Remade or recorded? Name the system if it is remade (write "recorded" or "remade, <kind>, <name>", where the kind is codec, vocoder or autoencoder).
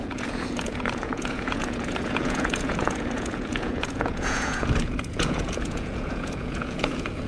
remade, vocoder, Vocos